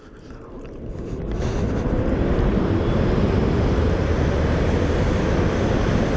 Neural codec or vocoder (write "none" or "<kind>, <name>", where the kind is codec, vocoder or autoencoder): none